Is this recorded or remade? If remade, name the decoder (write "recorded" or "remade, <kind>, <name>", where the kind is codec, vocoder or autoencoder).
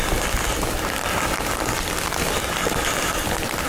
recorded